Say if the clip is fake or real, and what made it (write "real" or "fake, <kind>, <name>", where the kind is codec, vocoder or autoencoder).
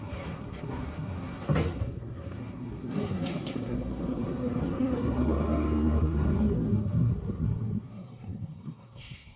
fake, codec, SNAC